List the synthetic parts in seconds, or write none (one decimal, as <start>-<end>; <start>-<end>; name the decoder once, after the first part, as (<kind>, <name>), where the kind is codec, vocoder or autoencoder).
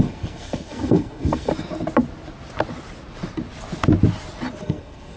0.0-1.5 (codec, SNAC); 4.6-5.2